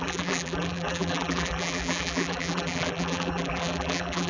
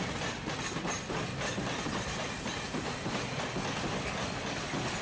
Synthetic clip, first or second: first